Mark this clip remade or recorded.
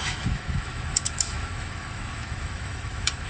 remade